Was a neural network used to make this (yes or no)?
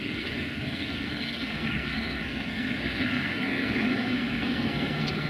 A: yes